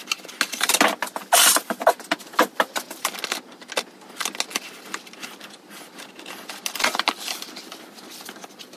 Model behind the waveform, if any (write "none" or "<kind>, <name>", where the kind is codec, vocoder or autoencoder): none